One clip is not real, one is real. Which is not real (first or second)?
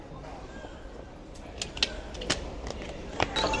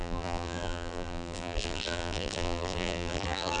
second